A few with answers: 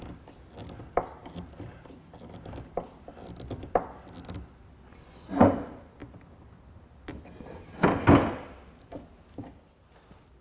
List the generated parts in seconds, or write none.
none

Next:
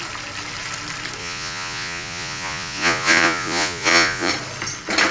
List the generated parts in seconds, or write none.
1.2-4.3 (vocoder, Vocos)